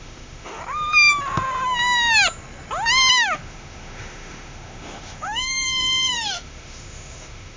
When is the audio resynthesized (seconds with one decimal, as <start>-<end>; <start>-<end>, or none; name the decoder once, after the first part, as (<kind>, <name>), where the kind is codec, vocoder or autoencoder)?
0.0-0.6 (autoencoder, DAC-VAE); 3.1-7.6